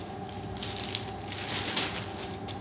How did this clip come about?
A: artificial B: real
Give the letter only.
B